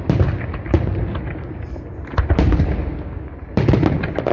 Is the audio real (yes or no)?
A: yes